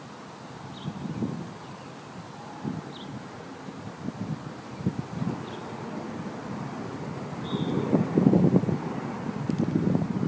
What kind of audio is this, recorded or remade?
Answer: recorded